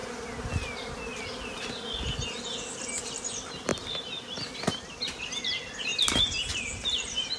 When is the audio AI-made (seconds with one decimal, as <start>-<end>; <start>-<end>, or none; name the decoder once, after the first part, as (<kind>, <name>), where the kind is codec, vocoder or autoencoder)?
none